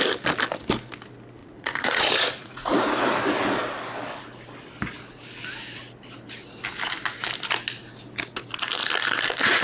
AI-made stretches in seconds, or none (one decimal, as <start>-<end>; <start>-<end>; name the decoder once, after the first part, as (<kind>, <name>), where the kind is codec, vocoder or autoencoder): 1.4-3.2 (vocoder, Vocos)